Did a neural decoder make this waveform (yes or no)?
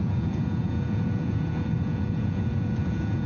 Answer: yes